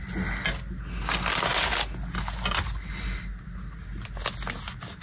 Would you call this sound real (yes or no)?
yes